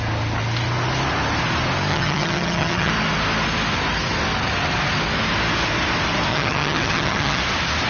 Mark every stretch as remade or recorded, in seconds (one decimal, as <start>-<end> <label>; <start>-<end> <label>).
0.0-1.9 recorded; 1.9-2.9 remade; 2.9-6.3 recorded; 6.3-7.4 remade; 7.4-7.9 recorded